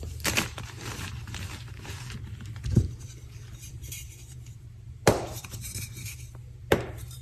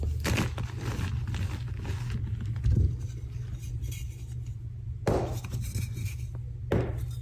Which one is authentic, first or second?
second